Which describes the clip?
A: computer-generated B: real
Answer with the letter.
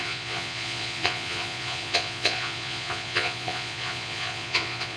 A